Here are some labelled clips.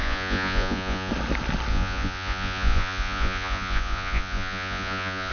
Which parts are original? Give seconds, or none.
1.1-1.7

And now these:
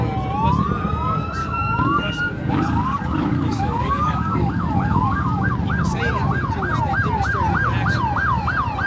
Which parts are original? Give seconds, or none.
0.0-1.4; 5.5-8.9

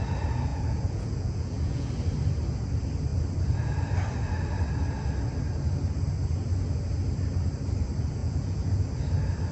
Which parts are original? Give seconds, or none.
0.0-0.5; 1.9-8.2; 8.8-9.5

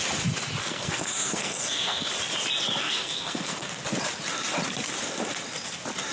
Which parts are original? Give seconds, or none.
0.0-0.6; 2.1-2.8; 3.7-6.1

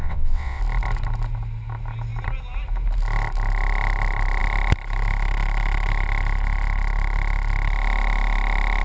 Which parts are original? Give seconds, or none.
0.6-8.8

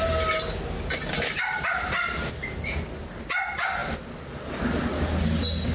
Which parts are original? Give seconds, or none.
0.0-5.7

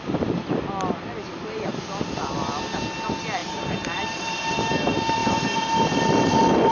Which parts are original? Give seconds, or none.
0.0-3.4; 4.6-6.7